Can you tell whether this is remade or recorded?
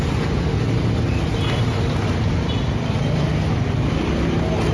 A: recorded